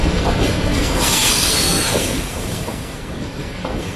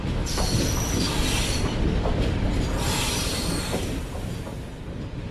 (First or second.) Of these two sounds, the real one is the second